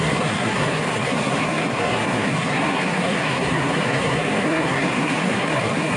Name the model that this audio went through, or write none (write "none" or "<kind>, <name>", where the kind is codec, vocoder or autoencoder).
codec, SNAC